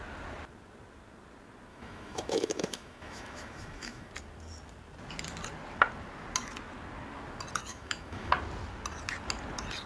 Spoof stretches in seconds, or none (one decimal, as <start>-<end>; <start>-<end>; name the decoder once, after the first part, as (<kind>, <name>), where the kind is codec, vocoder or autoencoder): 1.7-4.1 (autoencoder, DAC-VAE); 7.7-8.3